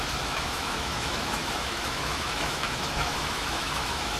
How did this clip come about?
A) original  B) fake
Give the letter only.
B